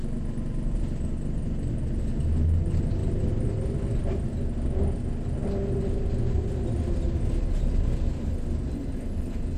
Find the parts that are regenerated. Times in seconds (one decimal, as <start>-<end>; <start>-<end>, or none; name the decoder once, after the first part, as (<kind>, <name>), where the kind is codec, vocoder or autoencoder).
none